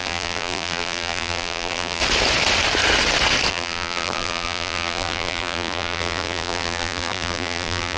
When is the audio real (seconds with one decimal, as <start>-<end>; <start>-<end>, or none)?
2.0-3.5